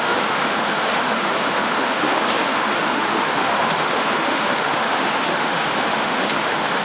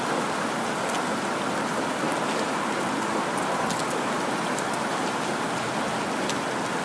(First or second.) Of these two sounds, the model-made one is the first